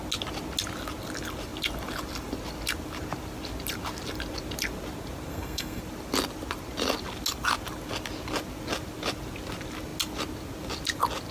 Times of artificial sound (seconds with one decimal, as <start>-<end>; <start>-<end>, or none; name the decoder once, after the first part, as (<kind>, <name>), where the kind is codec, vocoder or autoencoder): 5.3-5.8 (codec, SNAC)